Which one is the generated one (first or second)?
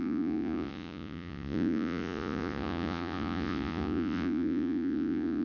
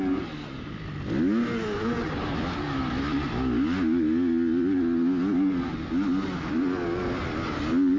first